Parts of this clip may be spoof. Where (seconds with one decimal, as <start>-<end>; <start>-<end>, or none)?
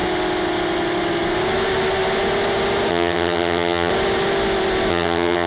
2.9-3.9; 4.9-5.5